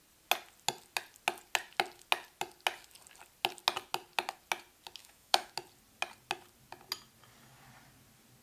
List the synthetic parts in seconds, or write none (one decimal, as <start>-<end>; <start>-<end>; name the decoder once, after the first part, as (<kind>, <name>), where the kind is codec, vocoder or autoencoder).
5.0-5.5 (autoencoder, DAC-VAE)